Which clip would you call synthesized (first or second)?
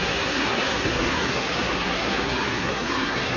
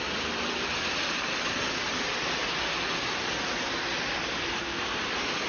first